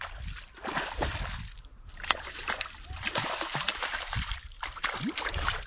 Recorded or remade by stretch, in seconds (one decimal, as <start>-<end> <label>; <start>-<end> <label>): 0.0-1.7 recorded; 1.7-4.6 remade; 4.6-5.7 recorded